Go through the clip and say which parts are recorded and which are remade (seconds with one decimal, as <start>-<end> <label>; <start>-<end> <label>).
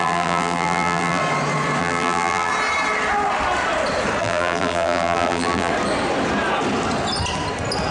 0.0-1.2 remade; 1.2-1.8 recorded; 1.8-2.5 remade; 2.5-4.2 recorded; 4.2-5.7 remade; 5.7-7.9 recorded